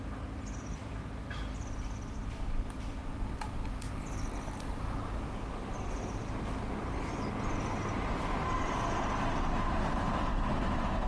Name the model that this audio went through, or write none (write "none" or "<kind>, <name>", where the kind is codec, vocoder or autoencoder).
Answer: none